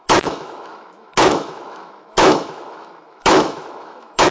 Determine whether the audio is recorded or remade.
remade